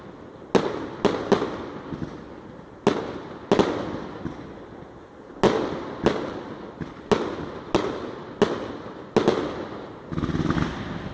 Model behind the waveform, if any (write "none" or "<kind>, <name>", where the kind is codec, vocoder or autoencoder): none